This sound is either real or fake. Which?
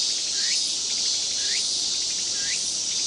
fake